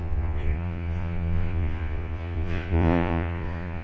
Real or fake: fake